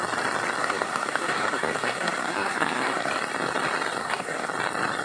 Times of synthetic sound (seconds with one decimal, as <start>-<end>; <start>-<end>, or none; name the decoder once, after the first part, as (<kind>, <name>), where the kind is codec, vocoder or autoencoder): 0.6-3.1 (codec, SNAC); 4.0-4.5